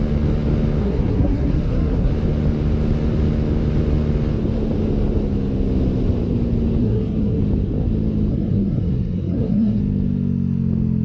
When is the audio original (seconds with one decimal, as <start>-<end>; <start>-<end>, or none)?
0.0-0.8; 2.1-6.8; 7.4-8.3; 9.8-11.0